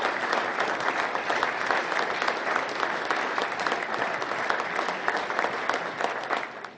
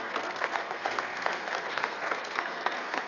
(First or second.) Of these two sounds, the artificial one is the second